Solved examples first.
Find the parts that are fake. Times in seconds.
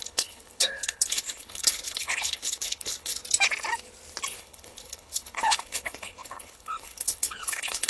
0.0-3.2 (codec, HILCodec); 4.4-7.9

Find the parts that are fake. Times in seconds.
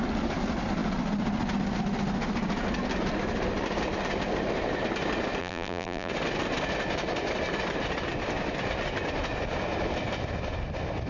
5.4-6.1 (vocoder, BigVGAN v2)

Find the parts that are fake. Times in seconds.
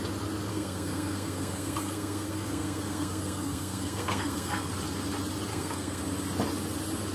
0.5-4.7 (codec, SNAC); 5.5-6.0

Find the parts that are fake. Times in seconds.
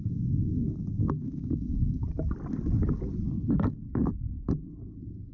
0.0-2.0 (codec, DAC)